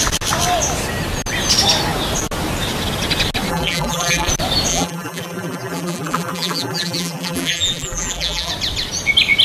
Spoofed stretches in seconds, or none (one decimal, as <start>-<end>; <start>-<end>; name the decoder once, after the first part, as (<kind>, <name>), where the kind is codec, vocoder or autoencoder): 3.5-4.3 (vocoder, BigVGAN v2); 4.7-8.5